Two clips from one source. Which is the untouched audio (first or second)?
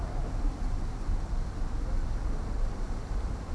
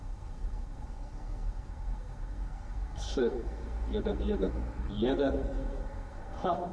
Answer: first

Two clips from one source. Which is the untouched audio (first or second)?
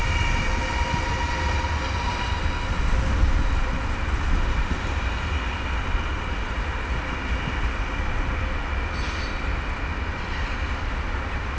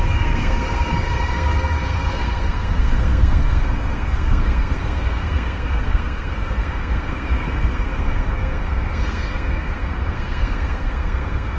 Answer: first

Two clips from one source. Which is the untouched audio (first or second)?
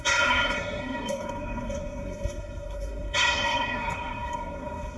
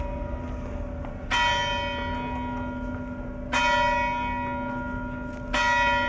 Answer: second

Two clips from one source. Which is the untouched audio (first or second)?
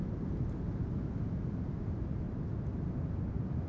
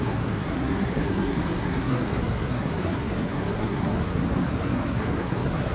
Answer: first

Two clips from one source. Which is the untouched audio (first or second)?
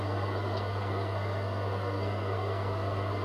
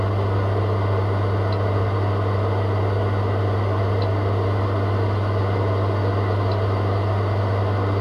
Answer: second